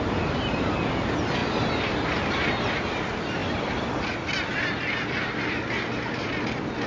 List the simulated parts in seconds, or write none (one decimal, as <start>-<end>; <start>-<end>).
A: none